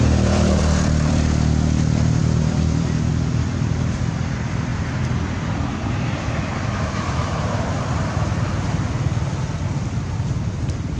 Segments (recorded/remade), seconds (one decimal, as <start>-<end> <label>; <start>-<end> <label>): 0.0-11.0 remade